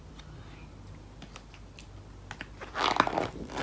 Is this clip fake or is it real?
real